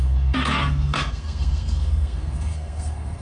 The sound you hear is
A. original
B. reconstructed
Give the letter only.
B